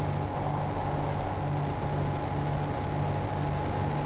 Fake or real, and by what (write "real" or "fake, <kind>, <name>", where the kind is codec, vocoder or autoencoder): real